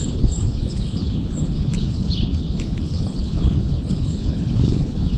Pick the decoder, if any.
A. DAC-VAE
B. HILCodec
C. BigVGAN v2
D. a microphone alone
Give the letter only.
B